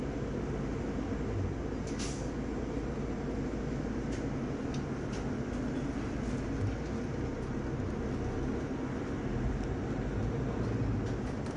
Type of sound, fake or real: real